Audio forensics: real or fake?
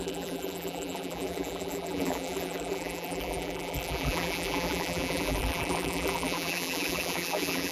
fake